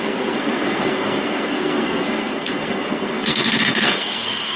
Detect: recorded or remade remade